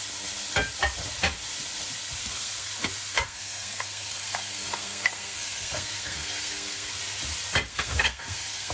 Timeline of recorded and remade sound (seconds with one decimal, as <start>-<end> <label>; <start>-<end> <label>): 0.0-2.2 recorded; 2.2-2.7 remade; 2.7-3.1 recorded; 3.1-7.0 remade; 7.0-7.7 recorded; 7.7-8.7 remade